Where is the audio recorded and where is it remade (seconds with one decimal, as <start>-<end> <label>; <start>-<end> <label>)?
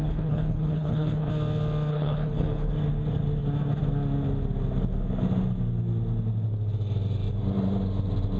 0.0-1.3 remade; 1.3-1.9 recorded; 1.9-2.7 remade; 2.7-8.4 recorded